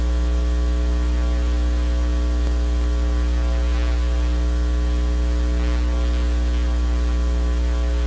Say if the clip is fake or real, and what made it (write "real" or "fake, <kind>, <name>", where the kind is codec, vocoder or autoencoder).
real